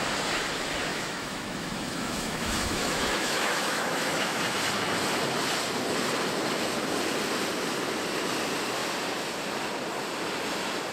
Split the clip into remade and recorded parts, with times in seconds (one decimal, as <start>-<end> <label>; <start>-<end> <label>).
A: 0.0-0.9 recorded; 0.9-4.4 remade; 4.4-10.9 recorded